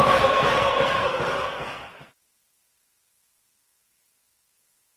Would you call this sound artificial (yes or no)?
yes